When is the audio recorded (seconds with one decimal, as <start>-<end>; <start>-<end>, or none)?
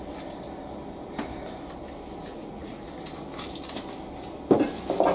0.0-2.3; 2.9-5.1